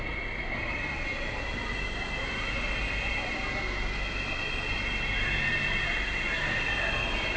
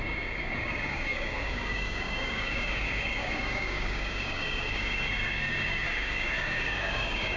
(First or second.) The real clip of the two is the first